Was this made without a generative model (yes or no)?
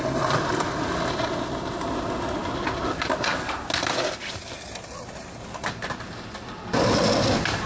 yes